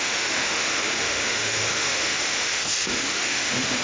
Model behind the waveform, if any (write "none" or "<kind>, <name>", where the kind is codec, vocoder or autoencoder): autoencoder, DAC-VAE